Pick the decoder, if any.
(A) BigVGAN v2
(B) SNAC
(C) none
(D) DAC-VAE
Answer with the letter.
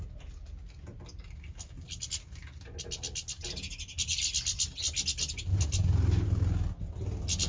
C